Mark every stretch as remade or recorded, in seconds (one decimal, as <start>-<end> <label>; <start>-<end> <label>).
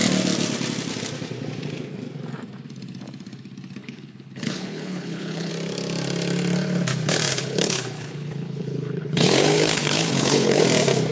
0.0-3.8 recorded; 3.8-5.5 remade; 5.5-7.3 recorded; 7.3-10.6 remade; 10.6-11.1 recorded